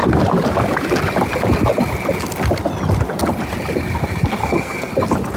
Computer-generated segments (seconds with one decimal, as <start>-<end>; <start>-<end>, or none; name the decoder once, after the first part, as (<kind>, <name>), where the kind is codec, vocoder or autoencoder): 4.4-4.9 (codec, SNAC)